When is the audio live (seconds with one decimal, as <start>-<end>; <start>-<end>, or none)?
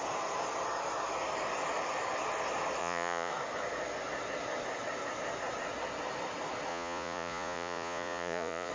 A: 0.0-2.8; 3.3-6.7